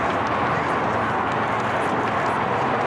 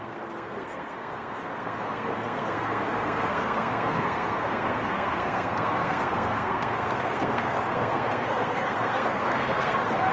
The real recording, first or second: first